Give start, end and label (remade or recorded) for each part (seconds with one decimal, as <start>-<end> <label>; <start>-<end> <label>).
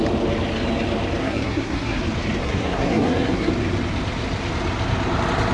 0.0-1.2 recorded; 1.2-2.0 remade; 2.0-2.4 recorded; 2.4-3.5 remade; 3.5-5.5 recorded